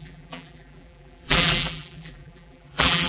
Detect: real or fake fake